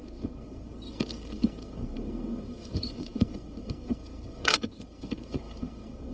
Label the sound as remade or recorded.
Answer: remade